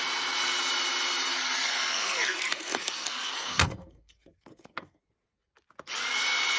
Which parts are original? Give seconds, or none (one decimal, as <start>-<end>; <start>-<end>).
0.0-1.3; 5.0-6.6